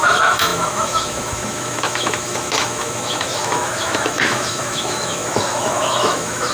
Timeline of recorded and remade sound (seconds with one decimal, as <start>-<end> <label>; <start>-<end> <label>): 0.0-6.5 remade